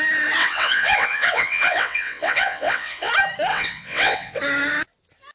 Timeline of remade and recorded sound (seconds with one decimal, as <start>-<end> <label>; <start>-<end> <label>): 0.0-0.4 recorded; 0.4-3.1 remade; 3.1-3.5 recorded; 3.5-4.4 remade; 4.4-5.3 recorded